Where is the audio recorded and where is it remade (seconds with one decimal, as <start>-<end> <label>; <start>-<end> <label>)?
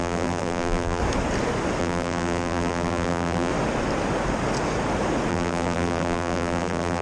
0.0-1.0 remade; 1.0-1.8 recorded; 1.8-3.5 remade; 3.5-5.3 recorded; 5.3-7.0 remade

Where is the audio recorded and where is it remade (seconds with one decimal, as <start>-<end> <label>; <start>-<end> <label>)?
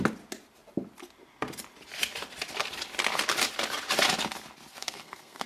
0.0-4.7 recorded; 4.7-5.5 remade